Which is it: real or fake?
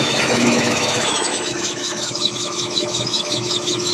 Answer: fake